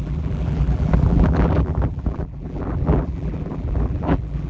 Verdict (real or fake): fake